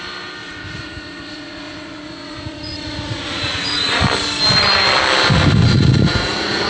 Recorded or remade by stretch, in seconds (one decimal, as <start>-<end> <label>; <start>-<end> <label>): 0.0-0.4 recorded; 0.4-4.0 remade; 4.0-5.6 recorded; 5.6-6.7 remade

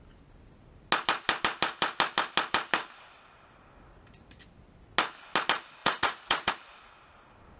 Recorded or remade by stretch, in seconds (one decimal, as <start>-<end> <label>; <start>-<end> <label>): 0.0-5.8 recorded; 5.8-6.5 remade; 6.5-7.6 recorded

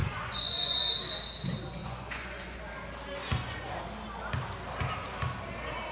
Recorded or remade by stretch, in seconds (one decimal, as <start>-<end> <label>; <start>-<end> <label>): 0.0-0.8 remade; 0.8-1.8 recorded; 1.8-2.6 remade; 2.6-3.2 recorded; 3.2-3.7 remade; 3.7-5.9 recorded

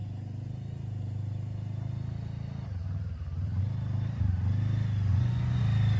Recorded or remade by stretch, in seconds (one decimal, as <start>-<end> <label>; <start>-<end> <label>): 0.0-5.1 recorded; 5.1-5.6 remade; 5.6-6.0 recorded

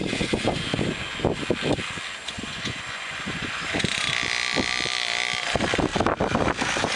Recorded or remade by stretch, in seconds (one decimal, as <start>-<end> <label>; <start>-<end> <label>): 0.0-0.5 remade; 0.5-2.2 recorded; 2.2-4.1 remade; 4.1-7.0 recorded

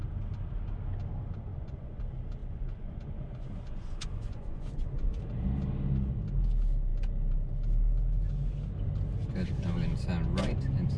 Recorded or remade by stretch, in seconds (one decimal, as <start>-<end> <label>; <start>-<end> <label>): 0.0-1.5 recorded; 1.5-2.0 remade; 2.0-2.4 recorded; 2.4-5.2 remade; 5.2-11.0 recorded

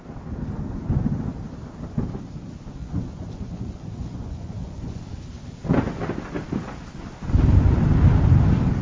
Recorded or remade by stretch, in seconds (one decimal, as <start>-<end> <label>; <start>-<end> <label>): 0.0-2.8 recorded; 2.8-5.0 remade; 5.0-8.8 recorded